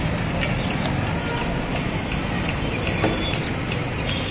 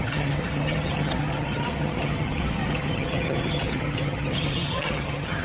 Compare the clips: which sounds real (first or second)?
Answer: first